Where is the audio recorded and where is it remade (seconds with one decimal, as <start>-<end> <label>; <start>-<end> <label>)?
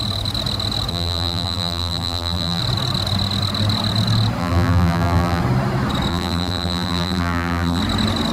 0.0-0.9 recorded; 0.9-2.6 remade; 2.6-4.4 recorded; 4.4-5.4 remade; 5.4-6.1 recorded; 6.1-7.8 remade; 7.8-8.3 recorded